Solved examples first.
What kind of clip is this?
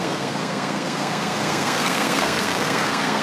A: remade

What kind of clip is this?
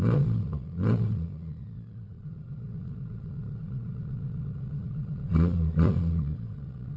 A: remade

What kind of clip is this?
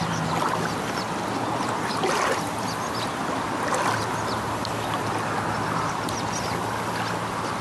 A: recorded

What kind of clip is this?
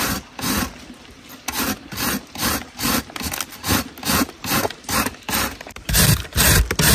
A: recorded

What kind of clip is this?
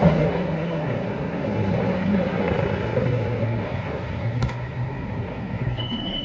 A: remade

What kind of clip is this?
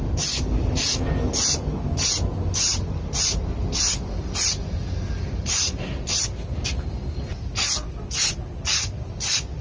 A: recorded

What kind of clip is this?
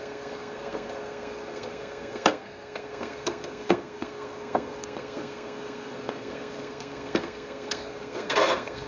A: remade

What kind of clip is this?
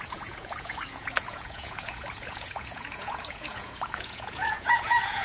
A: remade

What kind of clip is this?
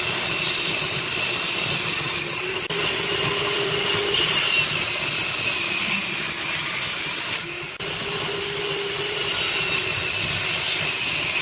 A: recorded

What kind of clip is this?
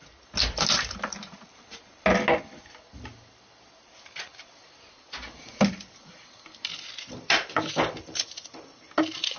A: recorded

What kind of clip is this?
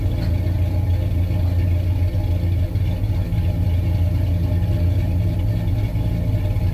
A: recorded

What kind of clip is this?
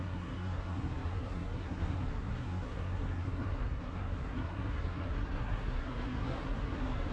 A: remade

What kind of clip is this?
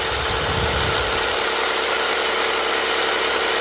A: recorded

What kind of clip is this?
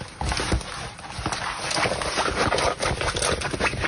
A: remade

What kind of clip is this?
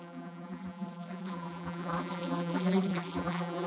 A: remade